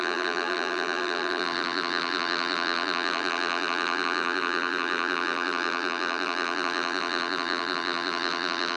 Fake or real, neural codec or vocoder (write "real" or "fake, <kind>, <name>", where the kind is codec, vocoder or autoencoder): fake, vocoder, BigVGAN v2